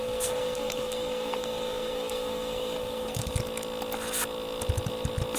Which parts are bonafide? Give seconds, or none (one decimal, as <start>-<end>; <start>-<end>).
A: 3.2-5.4